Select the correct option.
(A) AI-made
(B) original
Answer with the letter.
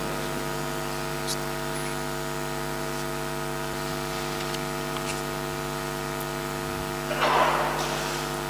B